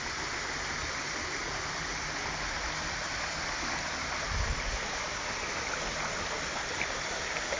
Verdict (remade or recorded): recorded